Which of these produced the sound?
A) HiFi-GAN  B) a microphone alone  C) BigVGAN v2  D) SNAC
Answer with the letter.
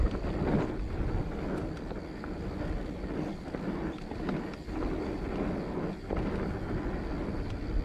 B